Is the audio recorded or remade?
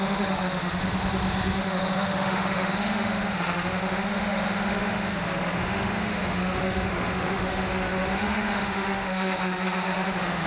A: remade